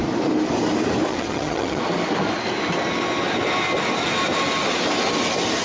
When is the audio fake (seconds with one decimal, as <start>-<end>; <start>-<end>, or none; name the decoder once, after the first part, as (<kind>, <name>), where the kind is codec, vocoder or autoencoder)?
1.1-1.8 (vocoder, HiFi-GAN)